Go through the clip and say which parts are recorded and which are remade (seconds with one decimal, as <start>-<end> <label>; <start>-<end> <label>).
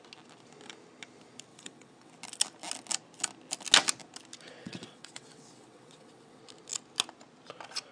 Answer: 0.0-1.5 recorded; 1.5-2.1 remade; 2.1-4.6 recorded; 4.6-6.4 remade; 6.4-7.9 recorded